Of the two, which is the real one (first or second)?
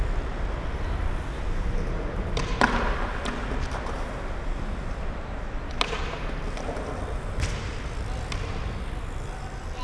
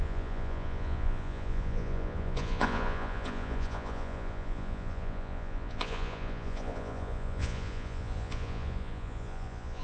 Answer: first